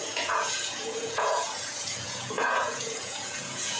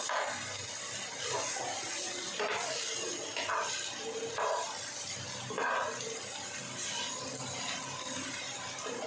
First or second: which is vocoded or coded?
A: first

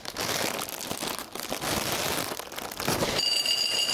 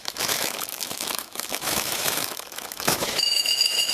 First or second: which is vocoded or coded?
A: second